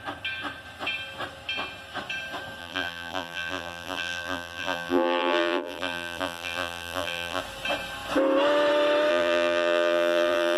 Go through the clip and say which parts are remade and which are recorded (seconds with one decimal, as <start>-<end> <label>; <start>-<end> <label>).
0.0-2.6 recorded; 2.6-7.4 remade; 7.4-9.1 recorded; 9.1-10.6 remade